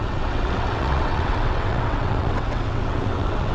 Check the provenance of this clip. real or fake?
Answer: fake